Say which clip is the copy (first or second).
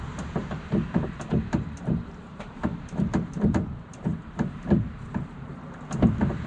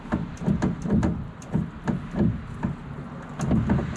first